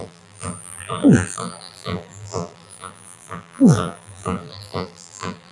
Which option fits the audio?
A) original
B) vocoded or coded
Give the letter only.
B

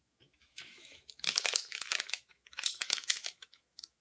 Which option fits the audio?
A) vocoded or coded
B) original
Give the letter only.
A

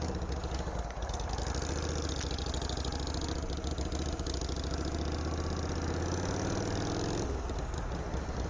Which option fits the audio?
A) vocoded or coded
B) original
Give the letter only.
B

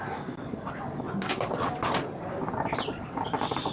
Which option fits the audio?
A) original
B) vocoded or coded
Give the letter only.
A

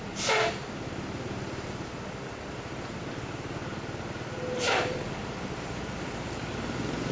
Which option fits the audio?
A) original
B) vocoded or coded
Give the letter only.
B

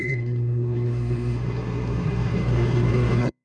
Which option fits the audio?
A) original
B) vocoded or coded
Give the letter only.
B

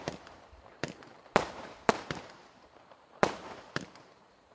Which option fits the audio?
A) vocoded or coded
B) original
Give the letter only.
A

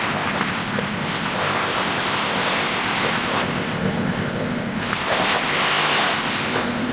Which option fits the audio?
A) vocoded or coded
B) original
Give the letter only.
A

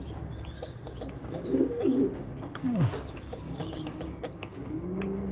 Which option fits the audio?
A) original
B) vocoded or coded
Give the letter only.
B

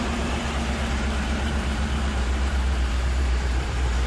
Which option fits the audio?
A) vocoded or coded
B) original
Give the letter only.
A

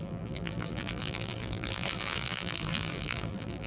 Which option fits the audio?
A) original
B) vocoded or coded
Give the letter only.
B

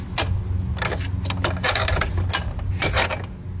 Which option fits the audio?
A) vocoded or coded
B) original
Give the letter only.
B